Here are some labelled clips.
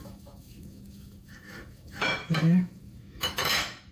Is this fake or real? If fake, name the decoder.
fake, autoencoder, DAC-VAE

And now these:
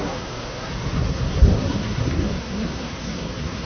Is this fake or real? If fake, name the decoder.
fake, codec, SNAC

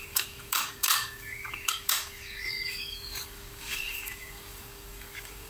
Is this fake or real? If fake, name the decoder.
fake, codec, DAC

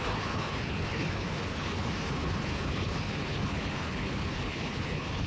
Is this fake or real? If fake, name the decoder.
fake, codec, HILCodec